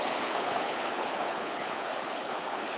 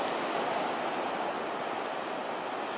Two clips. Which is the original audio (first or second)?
second